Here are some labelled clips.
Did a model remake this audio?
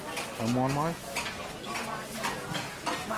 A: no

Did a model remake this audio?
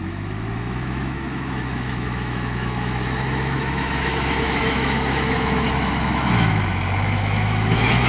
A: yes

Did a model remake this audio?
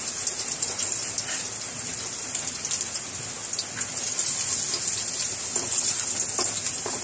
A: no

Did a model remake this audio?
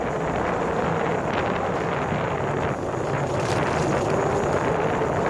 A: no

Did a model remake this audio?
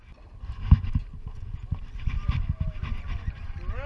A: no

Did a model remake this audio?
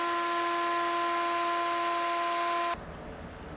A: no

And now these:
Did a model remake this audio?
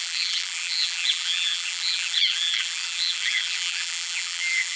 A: yes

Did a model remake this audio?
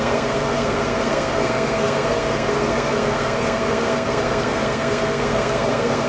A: yes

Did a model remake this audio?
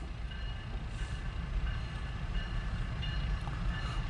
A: no